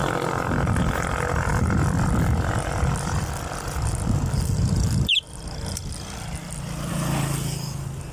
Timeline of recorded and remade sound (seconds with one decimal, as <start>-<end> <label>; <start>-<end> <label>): 0.0-0.8 remade; 0.8-1.5 recorded; 1.5-5.6 remade; 5.6-8.1 recorded